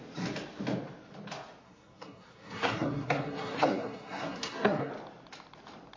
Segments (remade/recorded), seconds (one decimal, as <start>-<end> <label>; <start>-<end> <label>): 0.0-1.6 recorded; 1.6-4.9 remade; 4.9-6.0 recorded